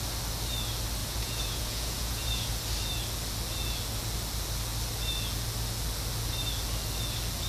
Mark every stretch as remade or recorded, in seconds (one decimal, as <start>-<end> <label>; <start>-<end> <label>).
0.0-1.0 recorded; 1.0-2.5 remade; 2.5-7.5 recorded